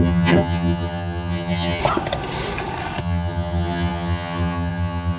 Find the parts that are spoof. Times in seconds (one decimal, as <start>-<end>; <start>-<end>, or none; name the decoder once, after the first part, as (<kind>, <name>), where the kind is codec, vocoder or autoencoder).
0.0-1.8 (vocoder, HiFi-GAN); 3.0-5.2